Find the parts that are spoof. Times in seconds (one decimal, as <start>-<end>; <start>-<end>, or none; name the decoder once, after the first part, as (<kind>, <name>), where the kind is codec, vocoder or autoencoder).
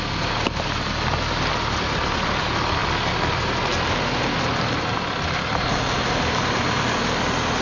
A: none